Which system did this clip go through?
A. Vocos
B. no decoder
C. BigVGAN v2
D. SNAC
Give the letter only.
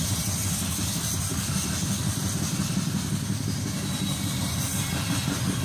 B